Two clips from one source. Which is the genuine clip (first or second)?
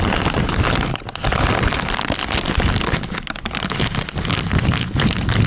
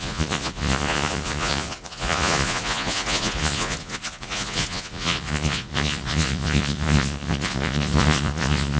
first